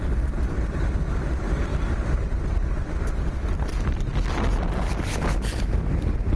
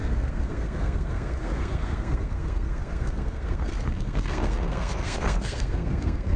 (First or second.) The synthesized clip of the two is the second